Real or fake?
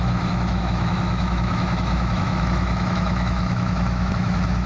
fake